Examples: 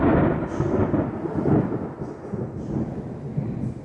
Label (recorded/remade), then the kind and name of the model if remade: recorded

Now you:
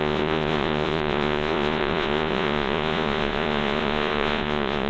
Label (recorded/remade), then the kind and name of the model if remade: remade, vocoder, Vocos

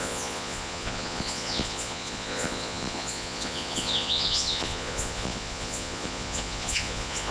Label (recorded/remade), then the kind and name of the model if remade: remade, vocoder, Vocos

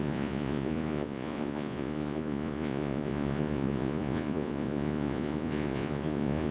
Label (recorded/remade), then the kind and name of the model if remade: remade, vocoder, Vocos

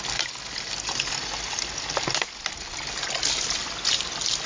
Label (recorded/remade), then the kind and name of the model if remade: recorded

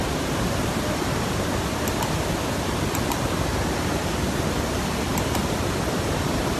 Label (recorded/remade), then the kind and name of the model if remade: recorded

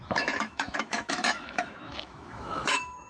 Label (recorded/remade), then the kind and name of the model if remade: remade, autoencoder, DAC-VAE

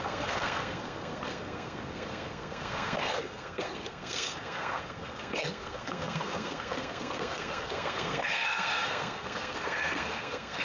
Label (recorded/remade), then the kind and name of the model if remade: remade, codec, SNAC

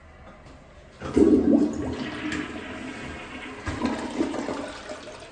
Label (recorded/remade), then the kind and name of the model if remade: recorded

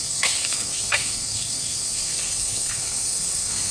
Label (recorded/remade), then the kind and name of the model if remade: remade, codec, SNAC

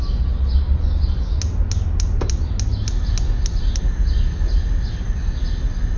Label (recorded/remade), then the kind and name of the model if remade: recorded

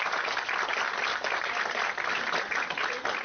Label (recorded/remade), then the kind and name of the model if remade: recorded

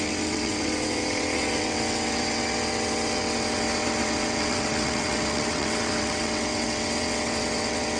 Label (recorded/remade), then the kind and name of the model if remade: remade, vocoder, WaveNeXt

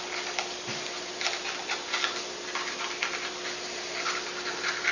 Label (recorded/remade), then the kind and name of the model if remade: recorded